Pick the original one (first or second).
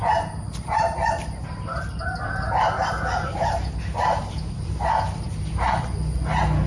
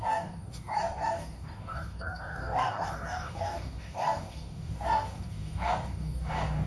first